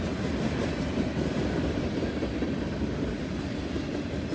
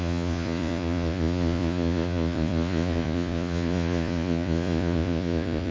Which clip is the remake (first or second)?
second